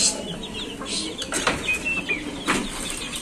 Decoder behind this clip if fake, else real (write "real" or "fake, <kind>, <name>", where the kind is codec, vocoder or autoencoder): real